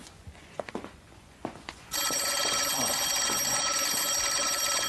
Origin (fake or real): fake